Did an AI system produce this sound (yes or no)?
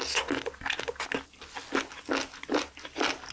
no